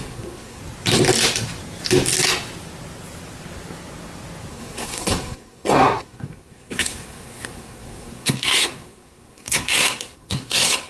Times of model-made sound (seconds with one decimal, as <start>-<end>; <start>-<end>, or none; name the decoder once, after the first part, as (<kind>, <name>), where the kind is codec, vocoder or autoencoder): 0.0-0.6 (codec, SNAC); 4.5-10.9